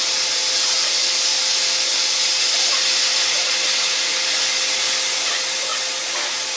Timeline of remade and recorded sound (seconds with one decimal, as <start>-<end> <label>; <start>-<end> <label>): 0.0-6.6 recorded